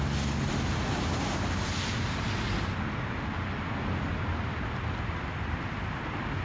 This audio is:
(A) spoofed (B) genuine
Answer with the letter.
B